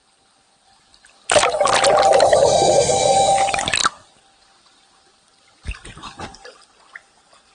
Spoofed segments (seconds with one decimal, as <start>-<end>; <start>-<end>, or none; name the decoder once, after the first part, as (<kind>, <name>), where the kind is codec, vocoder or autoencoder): none